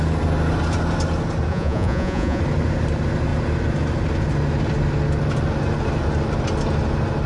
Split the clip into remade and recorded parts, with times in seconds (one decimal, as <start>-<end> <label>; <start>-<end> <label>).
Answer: 0.0-1.5 recorded; 1.5-2.4 remade; 2.4-7.3 recorded